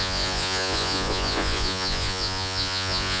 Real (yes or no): no